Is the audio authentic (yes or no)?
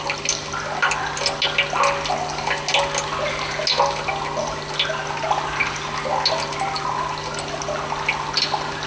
yes